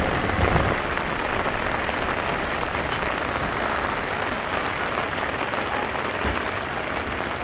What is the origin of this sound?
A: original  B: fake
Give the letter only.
A